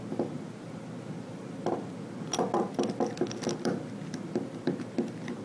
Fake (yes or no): yes